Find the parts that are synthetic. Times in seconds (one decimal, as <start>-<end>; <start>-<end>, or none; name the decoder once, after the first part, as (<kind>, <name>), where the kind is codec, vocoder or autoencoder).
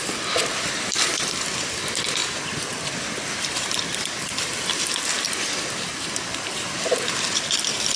0.0-8.0 (vocoder, BigVGAN v2)